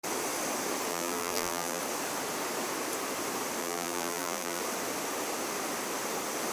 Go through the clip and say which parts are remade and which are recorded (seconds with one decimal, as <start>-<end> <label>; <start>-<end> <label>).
0.0-0.9 recorded; 0.9-1.8 remade; 1.8-3.6 recorded; 3.6-4.6 remade; 4.6-6.5 recorded